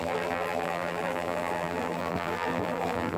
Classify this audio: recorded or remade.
remade